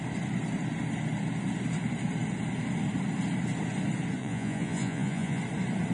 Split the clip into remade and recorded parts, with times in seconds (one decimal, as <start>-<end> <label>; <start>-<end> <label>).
0.0-4.2 recorded; 4.2-5.4 remade; 5.4-5.9 recorded